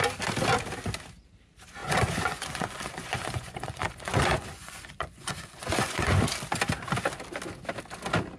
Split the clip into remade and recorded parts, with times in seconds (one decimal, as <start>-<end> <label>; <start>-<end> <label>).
0.0-1.8 recorded; 1.8-6.2 remade; 6.2-8.4 recorded